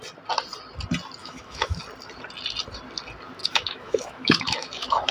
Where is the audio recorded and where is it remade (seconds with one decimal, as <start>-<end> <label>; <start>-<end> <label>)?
0.0-1.2 recorded; 1.2-1.8 remade; 1.8-3.4 recorded; 3.4-5.1 remade